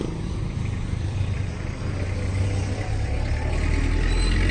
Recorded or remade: recorded